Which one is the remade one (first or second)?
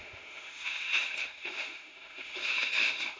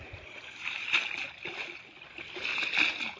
first